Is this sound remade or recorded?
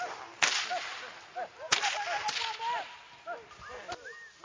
recorded